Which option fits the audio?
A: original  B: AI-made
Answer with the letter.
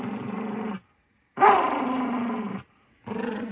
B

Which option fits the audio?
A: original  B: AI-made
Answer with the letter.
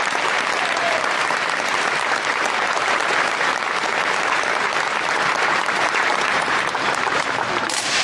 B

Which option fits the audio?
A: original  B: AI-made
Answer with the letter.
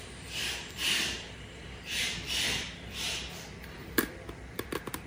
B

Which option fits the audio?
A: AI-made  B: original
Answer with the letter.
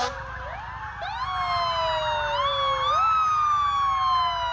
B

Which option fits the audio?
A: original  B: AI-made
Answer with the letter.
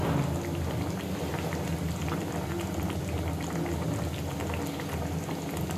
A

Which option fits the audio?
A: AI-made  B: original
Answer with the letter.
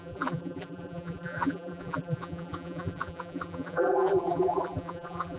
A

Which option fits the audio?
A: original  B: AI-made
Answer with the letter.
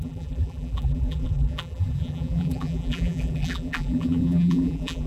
B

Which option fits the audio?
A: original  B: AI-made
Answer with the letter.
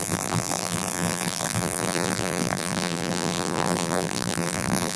B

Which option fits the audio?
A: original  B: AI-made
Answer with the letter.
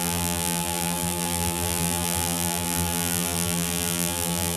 B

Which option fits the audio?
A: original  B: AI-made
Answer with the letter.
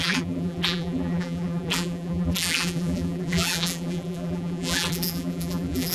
B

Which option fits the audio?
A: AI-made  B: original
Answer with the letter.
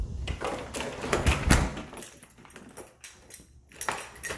B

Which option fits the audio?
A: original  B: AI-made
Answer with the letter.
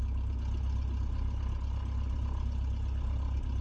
A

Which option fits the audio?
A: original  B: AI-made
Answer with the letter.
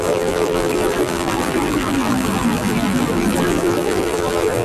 B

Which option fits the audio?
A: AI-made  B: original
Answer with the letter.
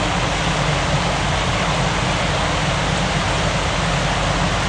B